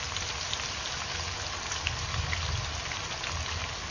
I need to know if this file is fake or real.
real